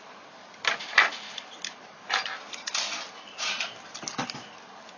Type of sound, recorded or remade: recorded